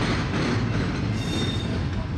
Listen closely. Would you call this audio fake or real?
real